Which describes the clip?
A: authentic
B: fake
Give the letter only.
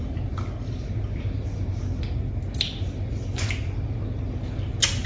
A